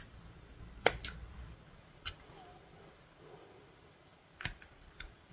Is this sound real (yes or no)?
yes